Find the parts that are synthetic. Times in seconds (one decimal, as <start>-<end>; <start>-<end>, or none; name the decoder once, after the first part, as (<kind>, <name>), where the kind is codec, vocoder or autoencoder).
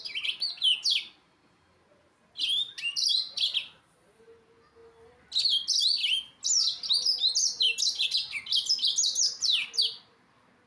none